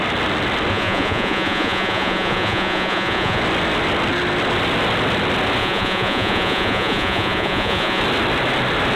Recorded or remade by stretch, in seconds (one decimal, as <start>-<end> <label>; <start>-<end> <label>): 0.0-0.7 recorded; 0.7-3.4 remade; 3.4-5.6 recorded; 5.6-8.0 remade; 8.0-9.0 recorded

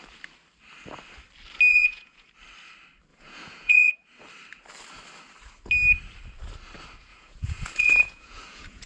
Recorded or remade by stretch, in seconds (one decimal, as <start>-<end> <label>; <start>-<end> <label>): 0.0-1.7 recorded; 1.7-2.3 remade; 2.3-3.1 recorded; 3.1-3.9 remade; 3.9-7.1 recorded; 7.1-8.9 remade

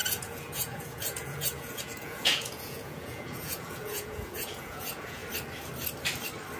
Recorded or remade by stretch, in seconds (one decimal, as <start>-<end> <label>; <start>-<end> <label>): 0.0-5.2 remade; 5.2-6.6 recorded

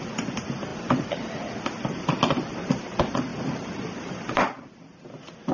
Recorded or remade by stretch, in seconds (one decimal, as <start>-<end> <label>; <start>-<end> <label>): 0.0-5.5 recorded

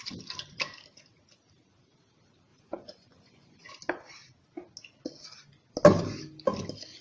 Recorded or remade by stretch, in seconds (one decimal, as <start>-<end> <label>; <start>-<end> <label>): 0.0-2.5 recorded; 2.5-3.7 remade; 3.7-7.0 recorded

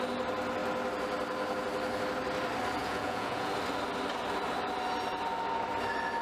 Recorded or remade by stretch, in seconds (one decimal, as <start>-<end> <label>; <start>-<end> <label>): 0.0-2.8 recorded; 2.8-3.5 remade; 3.5-6.2 recorded

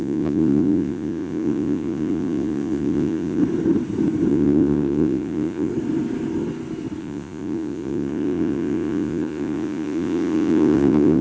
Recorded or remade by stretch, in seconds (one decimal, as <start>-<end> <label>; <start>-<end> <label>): 0.0-3.4 remade; 3.4-4.3 recorded; 4.3-5.7 remade; 5.7-7.0 recorded; 7.0-11.2 remade